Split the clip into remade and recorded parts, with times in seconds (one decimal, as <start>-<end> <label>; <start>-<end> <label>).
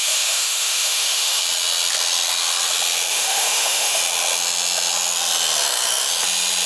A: 0.0-1.4 remade; 1.4-3.1 recorded; 3.1-4.0 remade; 4.0-6.7 recorded